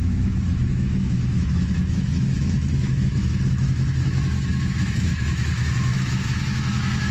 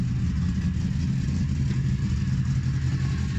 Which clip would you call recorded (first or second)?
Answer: second